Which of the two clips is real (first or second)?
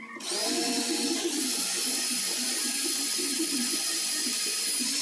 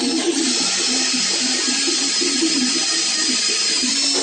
second